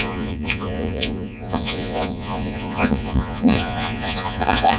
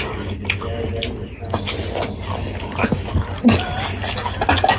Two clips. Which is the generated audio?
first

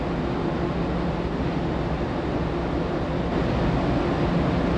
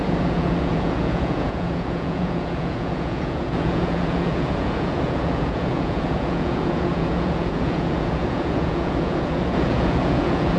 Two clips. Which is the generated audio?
second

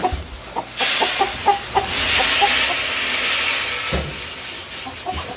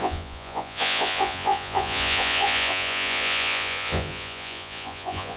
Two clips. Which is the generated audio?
second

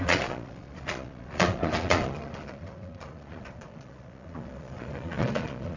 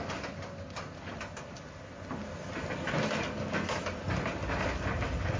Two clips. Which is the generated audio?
first